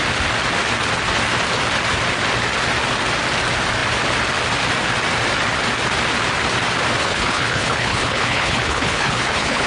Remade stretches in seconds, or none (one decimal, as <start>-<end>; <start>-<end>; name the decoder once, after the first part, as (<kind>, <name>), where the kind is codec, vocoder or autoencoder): 7.0-9.7 (codec, HILCodec)